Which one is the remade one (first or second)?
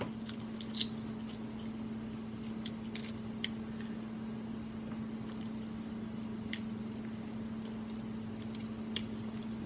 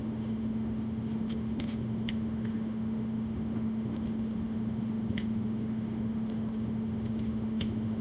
second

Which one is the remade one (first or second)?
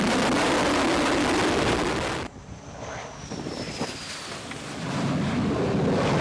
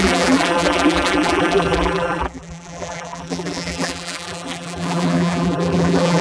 second